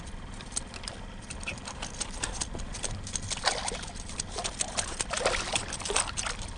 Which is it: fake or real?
fake